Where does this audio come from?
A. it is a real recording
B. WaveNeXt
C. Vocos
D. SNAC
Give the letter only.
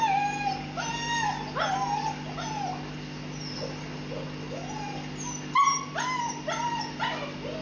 A